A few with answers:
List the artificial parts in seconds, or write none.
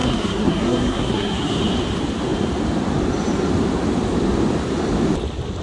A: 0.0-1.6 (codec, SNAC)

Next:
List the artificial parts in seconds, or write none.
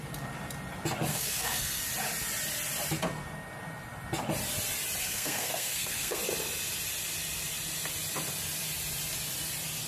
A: 1.1-1.8 (codec, SNAC); 5.0-6.2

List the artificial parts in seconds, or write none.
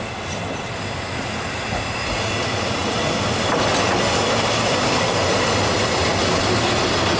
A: none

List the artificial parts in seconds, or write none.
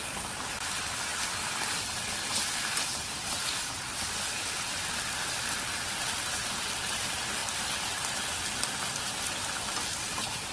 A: none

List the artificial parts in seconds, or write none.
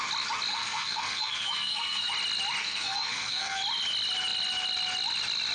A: 0.5-2.1 (codec, SNAC); 2.6-3.6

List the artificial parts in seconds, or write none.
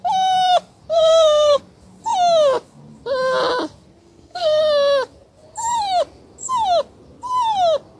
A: 0.9-1.6 (codec, SNAC); 4.0-4.6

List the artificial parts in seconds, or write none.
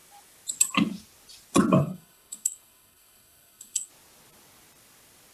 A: 1.8-3.9 (codec, SNAC)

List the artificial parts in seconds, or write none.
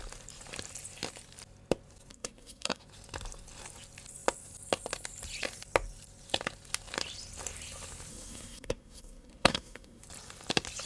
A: 2.1-2.8 (codec, SNAC); 8.1-10.0